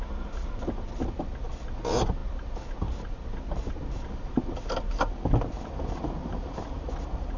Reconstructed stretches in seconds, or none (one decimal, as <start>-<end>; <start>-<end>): 6.2-6.9

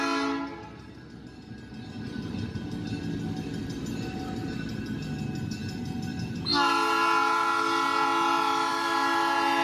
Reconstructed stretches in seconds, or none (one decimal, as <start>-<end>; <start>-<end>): none

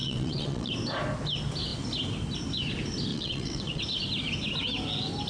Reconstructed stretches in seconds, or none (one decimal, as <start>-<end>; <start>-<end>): 0.0-0.7; 3.1-3.8

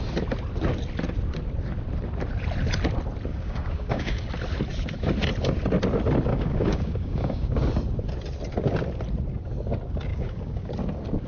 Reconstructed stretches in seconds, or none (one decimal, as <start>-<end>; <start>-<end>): 3.3-4.3; 6.3-7.6; 10.1-10.7

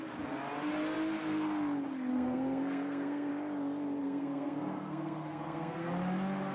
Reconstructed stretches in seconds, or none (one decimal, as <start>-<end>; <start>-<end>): 2.1-3.3; 4.0-5.9

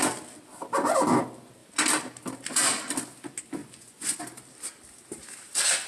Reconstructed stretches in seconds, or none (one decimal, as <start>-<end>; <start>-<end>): 3.6-4.2